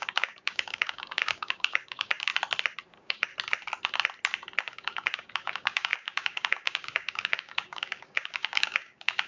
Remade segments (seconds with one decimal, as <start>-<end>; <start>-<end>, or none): 0.0-2.3; 2.9-3.3; 4.6-9.3